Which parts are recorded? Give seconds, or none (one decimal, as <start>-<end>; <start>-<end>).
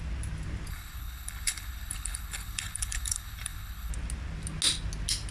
0.0-0.7; 3.9-5.3